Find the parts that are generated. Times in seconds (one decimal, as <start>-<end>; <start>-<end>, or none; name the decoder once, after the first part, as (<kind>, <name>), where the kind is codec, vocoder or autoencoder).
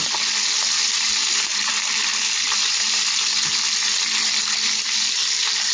1.5-2.0 (vocoder, BigVGAN v2)